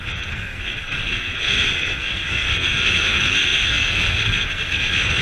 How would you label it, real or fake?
fake